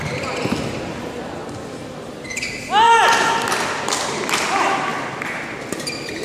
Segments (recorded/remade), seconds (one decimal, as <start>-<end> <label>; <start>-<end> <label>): 0.0-6.2 recorded